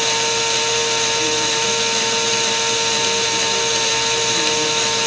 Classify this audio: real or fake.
real